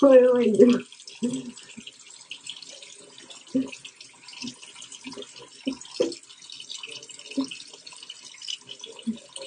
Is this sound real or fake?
real